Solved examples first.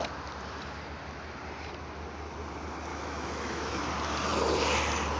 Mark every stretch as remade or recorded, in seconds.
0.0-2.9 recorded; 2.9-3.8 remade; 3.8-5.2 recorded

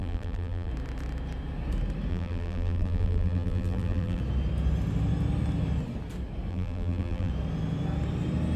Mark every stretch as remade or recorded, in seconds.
0.0-0.7 remade; 0.7-2.1 recorded; 2.1-4.2 remade; 4.2-6.5 recorded; 6.5-7.3 remade; 7.3-8.6 recorded

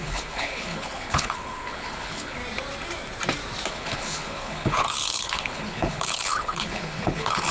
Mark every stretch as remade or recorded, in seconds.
0.0-2.4 remade; 2.4-3.7 recorded; 3.7-7.5 remade

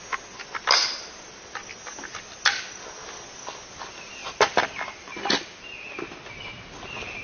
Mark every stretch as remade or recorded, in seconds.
0.0-4.2 recorded; 4.2-5.3 remade; 5.3-7.2 recorded

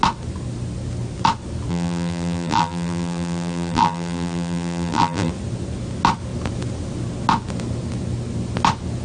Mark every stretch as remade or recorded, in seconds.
0.0-1.7 recorded; 1.7-5.3 remade; 5.3-9.0 recorded

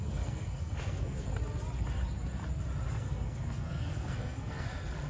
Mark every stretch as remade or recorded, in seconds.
0.0-1.3 remade; 1.3-2.9 recorded; 2.9-5.1 remade